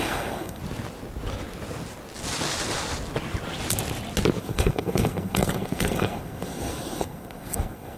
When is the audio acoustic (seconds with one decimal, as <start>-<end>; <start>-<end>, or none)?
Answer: 0.6-4.4